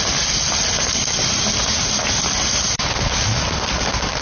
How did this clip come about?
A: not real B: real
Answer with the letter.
B